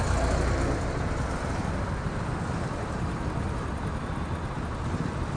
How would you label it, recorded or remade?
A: recorded